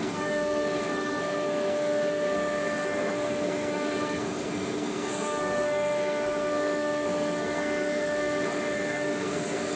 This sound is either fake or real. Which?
fake